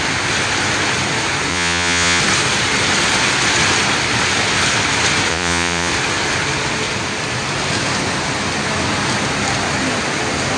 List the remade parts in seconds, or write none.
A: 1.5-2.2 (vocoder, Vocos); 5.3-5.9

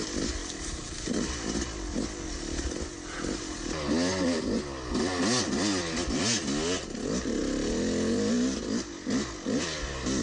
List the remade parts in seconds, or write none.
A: none